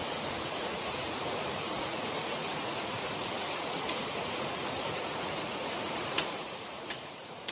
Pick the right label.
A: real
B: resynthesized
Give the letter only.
B